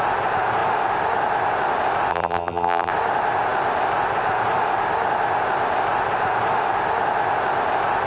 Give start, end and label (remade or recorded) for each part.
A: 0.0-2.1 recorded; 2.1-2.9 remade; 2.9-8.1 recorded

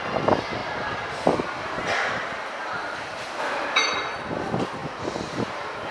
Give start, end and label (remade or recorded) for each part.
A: 0.0-0.6 recorded; 0.6-4.1 remade; 4.1-4.8 recorded; 4.8-5.9 remade

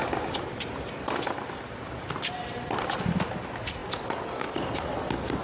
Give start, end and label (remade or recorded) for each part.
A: 0.0-3.2 remade; 3.2-5.4 recorded

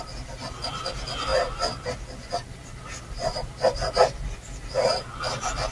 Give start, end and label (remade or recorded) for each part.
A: 0.0-5.7 recorded

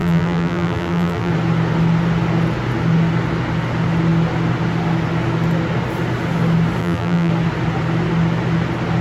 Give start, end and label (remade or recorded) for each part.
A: 0.0-1.3 remade; 1.3-6.8 recorded; 6.8-7.3 remade; 7.3-9.0 recorded

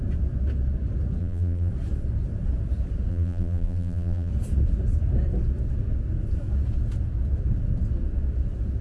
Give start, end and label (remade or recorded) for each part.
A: 0.0-1.2 recorded; 1.2-1.7 remade; 1.7-3.1 recorded; 3.1-4.3 remade; 4.3-8.8 recorded

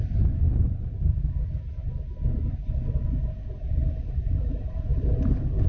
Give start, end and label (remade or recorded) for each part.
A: 0.0-4.9 remade; 4.9-5.7 recorded

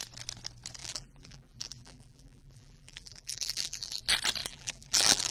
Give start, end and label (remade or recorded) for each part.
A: 0.0-0.8 recorded; 0.8-4.0 remade; 4.0-4.4 recorded; 4.4-5.3 remade